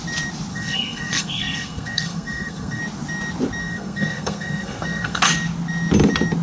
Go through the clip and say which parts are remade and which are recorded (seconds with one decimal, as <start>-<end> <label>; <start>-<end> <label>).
0.0-0.5 recorded; 0.5-2.8 remade; 2.8-3.6 recorded; 3.6-5.2 remade; 5.2-6.4 recorded